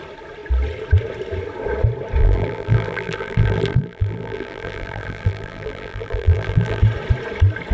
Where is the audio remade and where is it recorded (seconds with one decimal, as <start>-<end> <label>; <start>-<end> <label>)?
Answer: 0.0-2.2 recorded; 2.2-6.8 remade; 6.8-7.7 recorded